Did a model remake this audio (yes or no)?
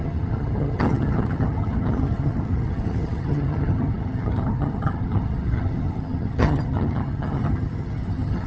yes